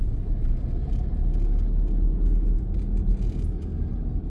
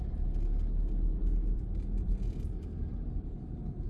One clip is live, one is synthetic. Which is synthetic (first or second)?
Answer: second